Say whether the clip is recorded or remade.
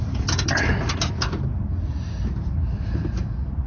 recorded